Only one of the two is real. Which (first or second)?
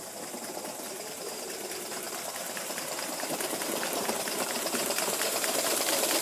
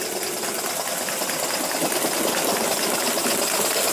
second